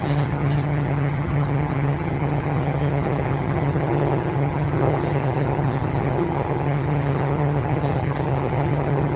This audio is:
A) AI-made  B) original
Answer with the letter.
A